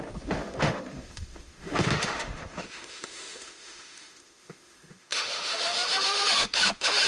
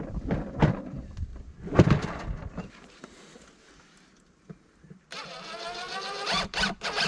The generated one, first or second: first